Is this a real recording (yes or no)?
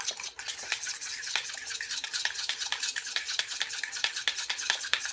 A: yes